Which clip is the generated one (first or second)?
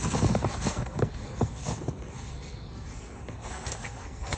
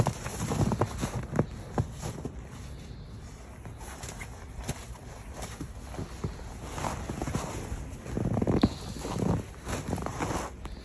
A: first